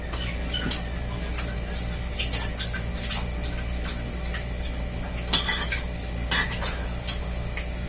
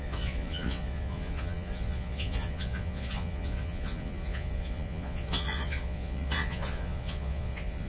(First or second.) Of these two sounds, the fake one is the second